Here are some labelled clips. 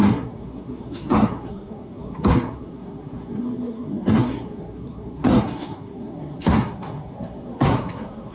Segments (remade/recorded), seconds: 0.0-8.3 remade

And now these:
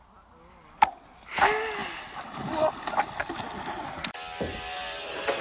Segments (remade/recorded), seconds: 0.0-5.4 recorded

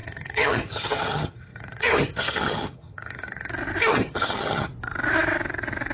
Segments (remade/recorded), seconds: 0.0-3.5 remade; 3.5-3.9 recorded; 3.9-4.7 remade; 4.7-5.9 recorded

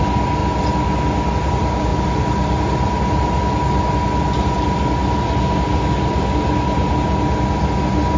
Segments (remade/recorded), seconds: 0.0-8.2 recorded

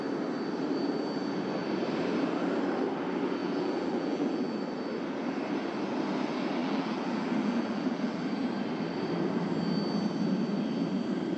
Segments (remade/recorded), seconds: 0.0-3.4 recorded; 3.4-4.7 remade; 4.7-6.6 recorded; 6.6-8.2 remade; 8.2-11.4 recorded